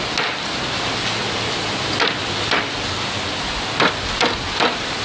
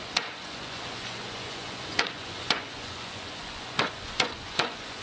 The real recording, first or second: first